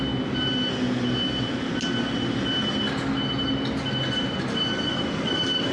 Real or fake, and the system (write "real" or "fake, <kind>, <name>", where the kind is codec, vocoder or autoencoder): real